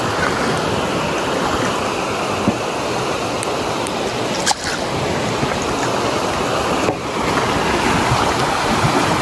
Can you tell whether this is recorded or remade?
recorded